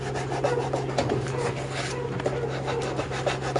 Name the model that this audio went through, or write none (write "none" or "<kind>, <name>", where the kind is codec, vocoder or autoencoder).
none